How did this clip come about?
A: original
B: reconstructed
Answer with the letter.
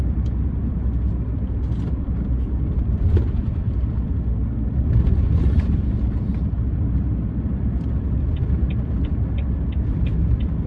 B